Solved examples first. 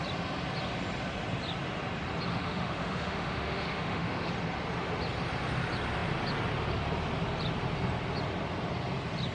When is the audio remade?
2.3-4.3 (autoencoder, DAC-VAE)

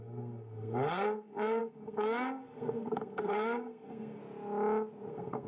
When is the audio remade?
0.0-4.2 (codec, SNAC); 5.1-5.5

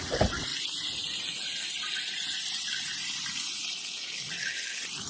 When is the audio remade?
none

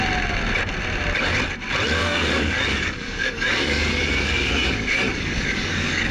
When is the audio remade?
2.0-6.1 (codec, DAC)

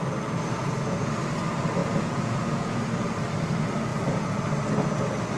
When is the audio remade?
0.6-1.1 (vocoder, Vocos); 1.8-2.8; 3.9-4.4

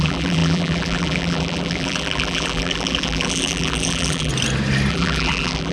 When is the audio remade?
0.0-4.3 (vocoder, BigVGAN v2); 4.9-5.7

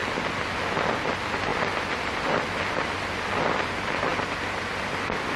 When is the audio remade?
1.5-2.6 (vocoder, BigVGAN v2)

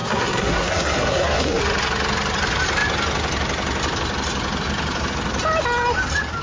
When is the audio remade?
0.0-1.6 (codec, SNAC)